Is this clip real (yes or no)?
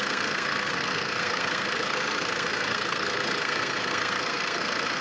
no